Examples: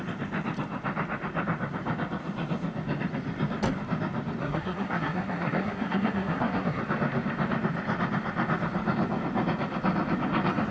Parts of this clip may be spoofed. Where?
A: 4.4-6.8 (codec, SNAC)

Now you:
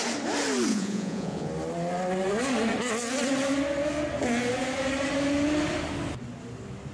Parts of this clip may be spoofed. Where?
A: 0.7-1.5 (vocoder, Vocos)

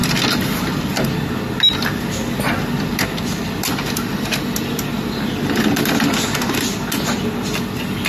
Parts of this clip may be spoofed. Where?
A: none

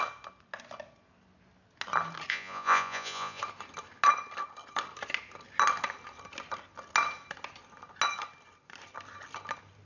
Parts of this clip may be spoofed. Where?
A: 2.3-3.4 (vocoder, Vocos)

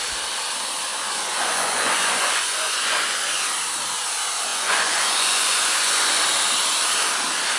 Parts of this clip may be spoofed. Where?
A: 0.9-3.4 (vocoder, Vocos); 4.5-6.2

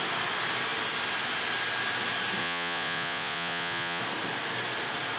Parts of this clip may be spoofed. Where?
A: 2.4-4.0 (vocoder, Vocos)

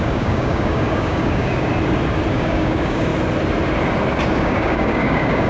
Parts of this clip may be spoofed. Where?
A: 0.0-1.7 (codec, DAC); 2.3-3.1; 4.4-5.5

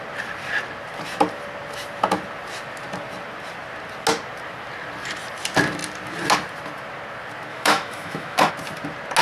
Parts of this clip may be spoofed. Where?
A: 7.5-8.5 (autoencoder, DAC-VAE)